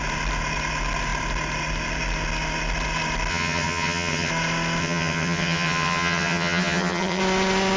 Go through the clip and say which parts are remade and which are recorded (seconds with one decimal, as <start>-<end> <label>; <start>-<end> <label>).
0.0-3.3 recorded; 3.3-4.3 remade; 4.3-4.8 recorded; 4.8-7.2 remade; 7.2-7.8 recorded